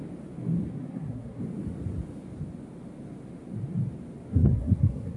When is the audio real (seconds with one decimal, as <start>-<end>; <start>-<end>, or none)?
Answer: 0.0-0.7; 1.4-4.3